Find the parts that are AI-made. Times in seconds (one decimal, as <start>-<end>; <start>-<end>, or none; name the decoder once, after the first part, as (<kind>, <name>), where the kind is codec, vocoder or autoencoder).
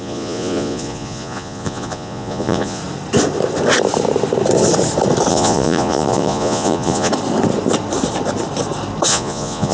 0.0-2.8 (vocoder, Vocos); 5.3-7.1; 9.1-9.7